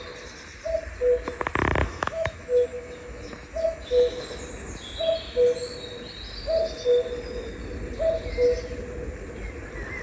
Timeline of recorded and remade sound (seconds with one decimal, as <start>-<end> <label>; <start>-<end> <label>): 0.0-1.8 recorded; 1.8-4.2 remade; 4.2-10.0 recorded